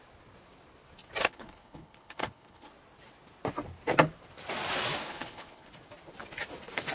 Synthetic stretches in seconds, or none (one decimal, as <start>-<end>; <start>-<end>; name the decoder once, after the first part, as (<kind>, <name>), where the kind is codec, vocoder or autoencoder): 1.2-2.7 (codec, HILCodec); 5.0-5.7